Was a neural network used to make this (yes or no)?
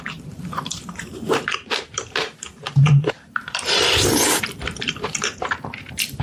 yes